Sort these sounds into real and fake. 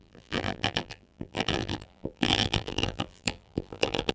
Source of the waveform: fake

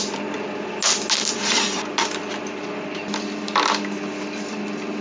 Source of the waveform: real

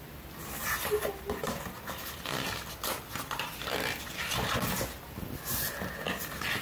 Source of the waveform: real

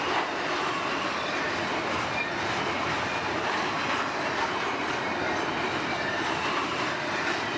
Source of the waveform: real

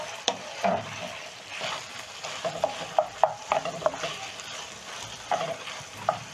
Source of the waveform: fake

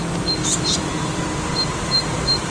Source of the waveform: real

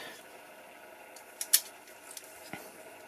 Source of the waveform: real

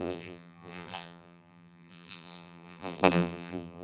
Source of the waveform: fake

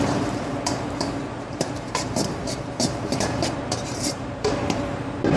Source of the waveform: fake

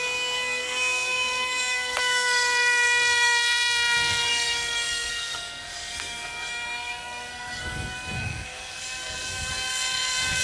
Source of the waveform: fake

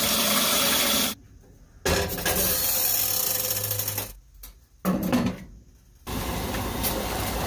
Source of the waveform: real